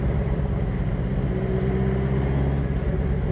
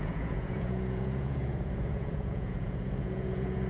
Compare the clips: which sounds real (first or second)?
first